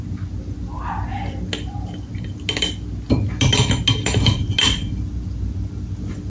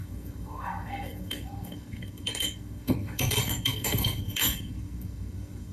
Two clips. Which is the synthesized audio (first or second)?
second